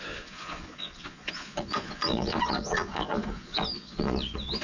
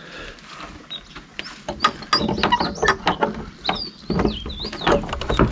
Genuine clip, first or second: second